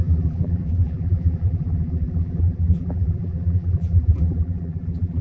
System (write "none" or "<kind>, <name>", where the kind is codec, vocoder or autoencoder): vocoder, BigVGAN v2